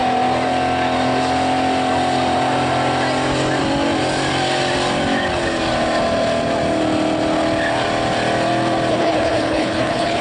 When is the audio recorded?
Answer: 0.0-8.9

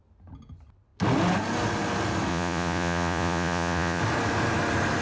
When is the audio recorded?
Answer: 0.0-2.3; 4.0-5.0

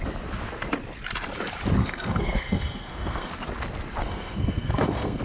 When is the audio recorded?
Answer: 0.0-1.8; 3.3-4.0

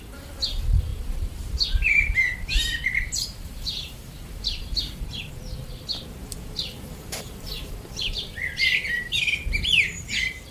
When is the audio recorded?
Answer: 0.0-0.9; 5.3-6.2; 9.2-10.5